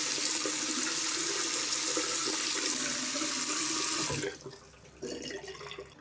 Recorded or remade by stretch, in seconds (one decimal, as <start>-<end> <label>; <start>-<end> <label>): 0.0-6.0 recorded